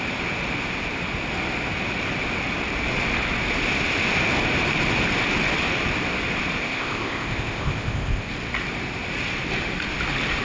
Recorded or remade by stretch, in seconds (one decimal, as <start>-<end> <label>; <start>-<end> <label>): 0.0-6.6 recorded; 6.6-8.3 remade; 8.3-10.4 recorded